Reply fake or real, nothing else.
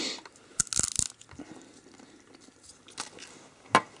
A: real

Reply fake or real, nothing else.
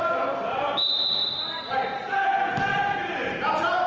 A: real